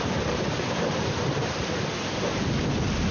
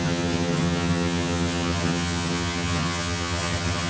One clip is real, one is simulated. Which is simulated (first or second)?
second